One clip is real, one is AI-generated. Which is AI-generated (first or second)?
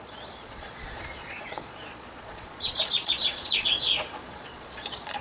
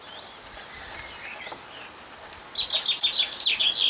first